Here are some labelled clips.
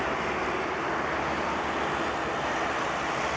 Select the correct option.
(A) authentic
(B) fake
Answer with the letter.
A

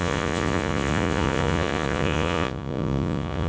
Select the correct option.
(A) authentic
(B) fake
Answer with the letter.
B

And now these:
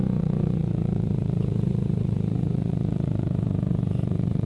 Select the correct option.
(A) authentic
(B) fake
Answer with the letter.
B